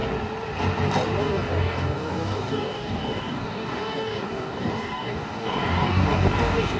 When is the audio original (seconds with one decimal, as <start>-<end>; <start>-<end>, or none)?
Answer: 0.0-1.2